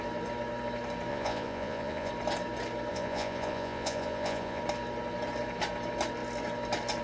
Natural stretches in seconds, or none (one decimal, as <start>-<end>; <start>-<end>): 0.0-1.1; 2.1-2.9; 4.6-7.0